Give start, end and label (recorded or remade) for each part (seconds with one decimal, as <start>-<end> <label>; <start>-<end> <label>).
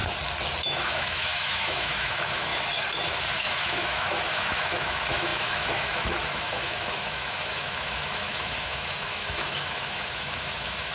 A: 0.0-0.6 recorded; 0.6-2.5 remade; 2.5-3.4 recorded; 3.4-10.9 remade